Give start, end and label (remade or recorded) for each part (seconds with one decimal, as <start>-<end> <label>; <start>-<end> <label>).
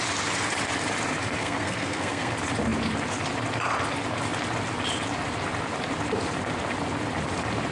0.0-1.4 recorded; 1.4-2.3 remade; 2.3-7.7 recorded